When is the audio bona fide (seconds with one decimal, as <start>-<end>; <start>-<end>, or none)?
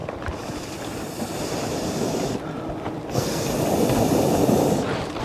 0.0-3.1; 3.5-5.2